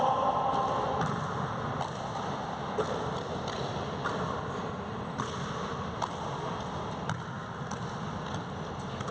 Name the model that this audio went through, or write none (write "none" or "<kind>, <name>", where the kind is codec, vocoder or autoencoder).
none